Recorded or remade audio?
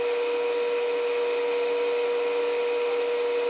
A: recorded